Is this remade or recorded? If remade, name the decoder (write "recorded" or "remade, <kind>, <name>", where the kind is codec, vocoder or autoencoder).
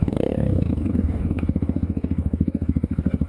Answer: remade, codec, DAC